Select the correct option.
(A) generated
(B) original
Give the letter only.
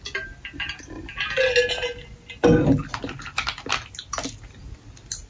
B